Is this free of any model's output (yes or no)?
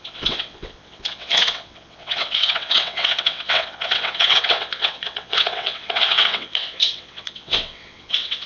no